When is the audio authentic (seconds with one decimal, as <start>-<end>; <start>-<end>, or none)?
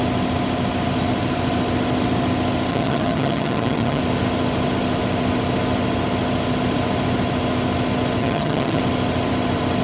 0.0-2.7; 4.0-8.2; 8.8-9.8